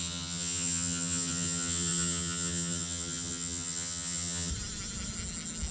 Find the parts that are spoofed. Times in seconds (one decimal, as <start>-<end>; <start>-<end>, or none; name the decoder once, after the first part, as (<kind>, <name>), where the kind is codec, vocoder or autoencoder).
0.0-4.5 (vocoder, HiFi-GAN)